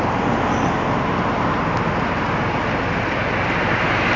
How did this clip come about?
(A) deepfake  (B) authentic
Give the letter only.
B